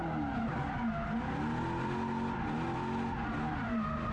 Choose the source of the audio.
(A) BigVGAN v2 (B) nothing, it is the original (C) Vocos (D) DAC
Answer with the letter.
B